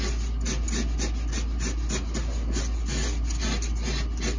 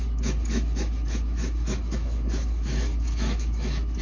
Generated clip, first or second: second